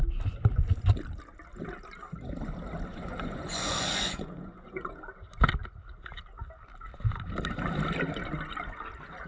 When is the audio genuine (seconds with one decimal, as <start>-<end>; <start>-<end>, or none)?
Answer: 0.0-2.9; 4.9-9.3